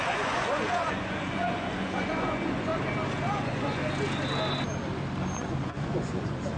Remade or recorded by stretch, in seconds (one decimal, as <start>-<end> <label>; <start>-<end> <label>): 0.0-2.7 remade; 2.7-3.3 recorded; 3.3-3.8 remade; 3.8-5.4 recorded; 5.4-6.6 remade